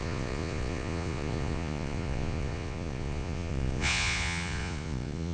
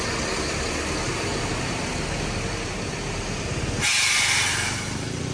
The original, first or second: second